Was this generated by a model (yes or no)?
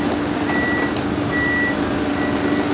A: no